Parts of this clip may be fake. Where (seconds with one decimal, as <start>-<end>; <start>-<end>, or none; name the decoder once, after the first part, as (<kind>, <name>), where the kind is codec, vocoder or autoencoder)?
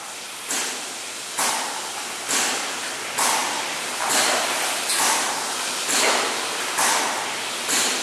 none